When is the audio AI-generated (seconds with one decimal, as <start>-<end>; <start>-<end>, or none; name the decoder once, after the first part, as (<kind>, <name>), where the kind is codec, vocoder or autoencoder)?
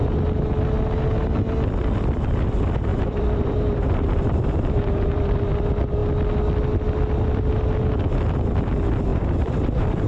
2.9-5.5 (vocoder, BigVGAN v2); 9.1-10.1